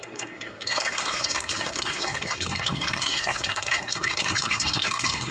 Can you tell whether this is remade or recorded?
remade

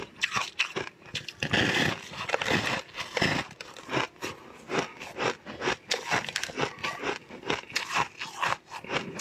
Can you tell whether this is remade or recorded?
recorded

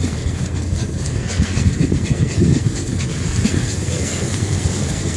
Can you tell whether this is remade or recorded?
remade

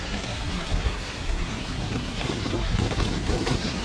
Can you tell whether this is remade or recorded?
remade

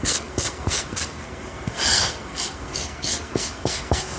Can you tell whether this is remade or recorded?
remade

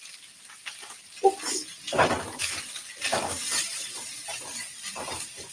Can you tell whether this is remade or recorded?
recorded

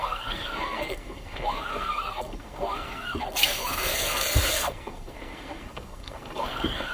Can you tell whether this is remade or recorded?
remade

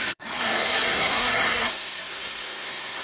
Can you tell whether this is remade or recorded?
remade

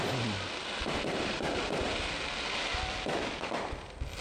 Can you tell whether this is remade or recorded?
recorded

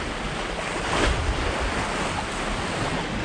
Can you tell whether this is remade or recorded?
recorded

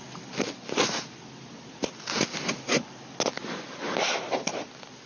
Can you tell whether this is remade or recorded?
recorded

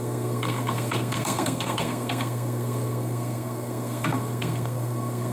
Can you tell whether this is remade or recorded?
remade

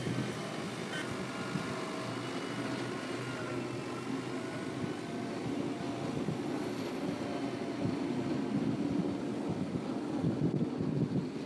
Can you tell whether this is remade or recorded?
recorded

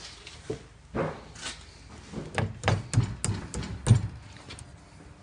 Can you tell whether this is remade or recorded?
recorded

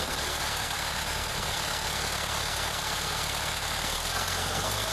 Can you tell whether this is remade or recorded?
remade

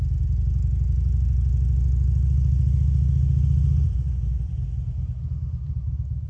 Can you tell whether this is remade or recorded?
recorded